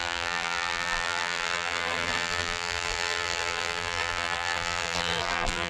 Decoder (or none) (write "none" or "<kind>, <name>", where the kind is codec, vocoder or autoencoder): vocoder, BigVGAN v2